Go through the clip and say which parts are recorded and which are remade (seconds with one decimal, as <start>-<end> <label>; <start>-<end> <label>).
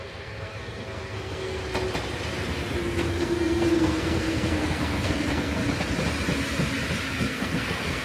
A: 0.0-1.6 remade; 1.6-2.8 recorded; 2.8-5.6 remade; 5.6-7.1 recorded; 7.1-8.0 remade